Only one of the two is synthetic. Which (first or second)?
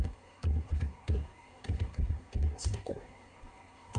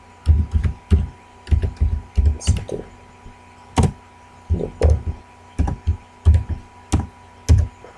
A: first